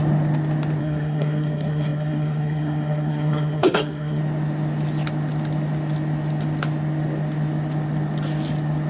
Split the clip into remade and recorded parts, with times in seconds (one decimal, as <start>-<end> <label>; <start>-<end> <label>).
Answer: 0.0-0.8 recorded; 0.8-4.2 remade; 4.2-8.9 recorded